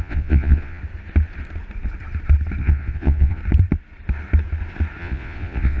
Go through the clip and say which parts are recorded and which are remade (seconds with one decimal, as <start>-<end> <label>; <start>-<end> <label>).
0.0-0.8 remade; 0.8-2.6 recorded; 2.6-3.4 remade; 3.4-5.0 recorded; 5.0-5.8 remade